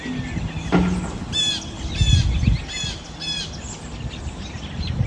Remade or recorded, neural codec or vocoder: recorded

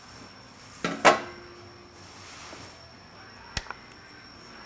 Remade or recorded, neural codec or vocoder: recorded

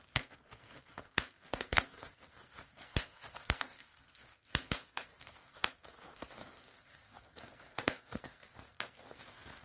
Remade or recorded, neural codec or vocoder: remade, codec, SNAC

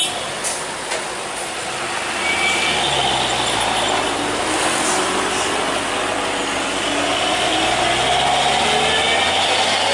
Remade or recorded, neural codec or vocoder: recorded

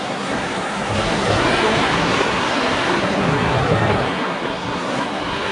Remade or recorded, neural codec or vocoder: remade, codec, SNAC